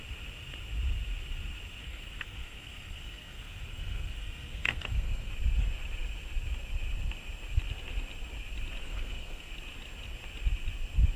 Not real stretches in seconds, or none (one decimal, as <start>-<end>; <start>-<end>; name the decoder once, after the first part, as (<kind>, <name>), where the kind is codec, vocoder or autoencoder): 1.8-5.3 (codec, SNAC); 8.8-9.5